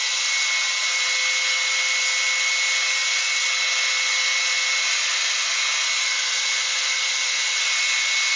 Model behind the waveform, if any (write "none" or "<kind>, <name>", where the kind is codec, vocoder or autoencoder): none